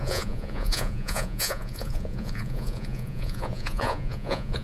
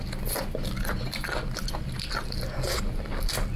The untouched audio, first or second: second